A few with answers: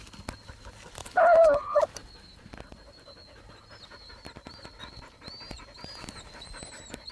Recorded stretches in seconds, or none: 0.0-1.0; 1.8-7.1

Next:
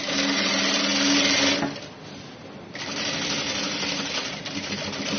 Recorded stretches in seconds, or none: 0.0-5.2

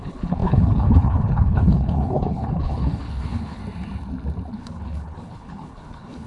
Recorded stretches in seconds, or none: 3.6-4.5

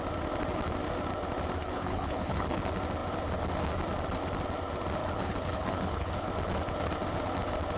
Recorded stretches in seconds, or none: 0.0-1.6; 2.6-5.0; 6.3-7.8

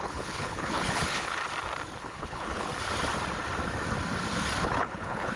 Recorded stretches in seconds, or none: 1.4-2.0; 2.7-4.6